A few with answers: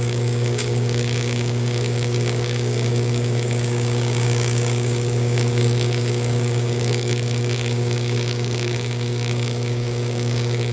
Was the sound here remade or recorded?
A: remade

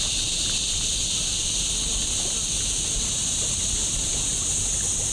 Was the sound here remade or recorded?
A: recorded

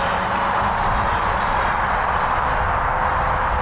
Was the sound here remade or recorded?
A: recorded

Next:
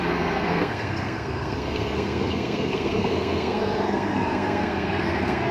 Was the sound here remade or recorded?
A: remade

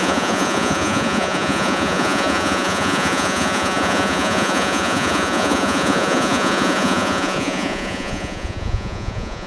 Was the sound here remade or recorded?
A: remade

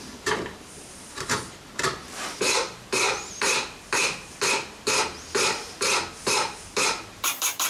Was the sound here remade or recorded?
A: remade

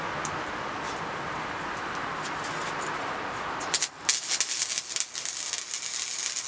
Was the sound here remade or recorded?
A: recorded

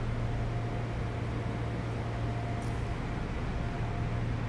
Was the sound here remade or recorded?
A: recorded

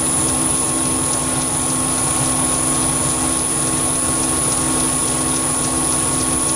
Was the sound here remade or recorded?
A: recorded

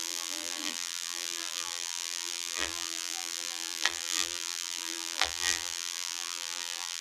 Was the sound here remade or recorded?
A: remade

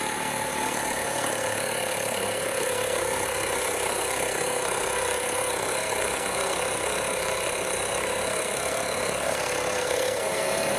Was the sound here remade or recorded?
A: remade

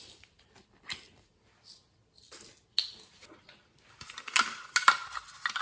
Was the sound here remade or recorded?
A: recorded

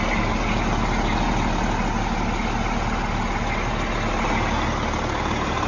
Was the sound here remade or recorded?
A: recorded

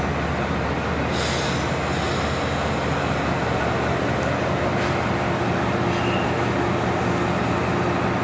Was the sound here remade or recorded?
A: recorded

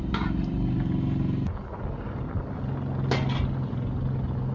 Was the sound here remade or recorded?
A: recorded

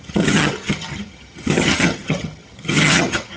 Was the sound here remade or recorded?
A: remade